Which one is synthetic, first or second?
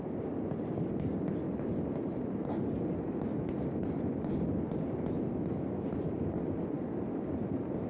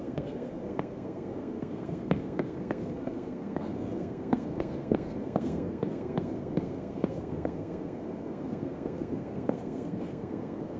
second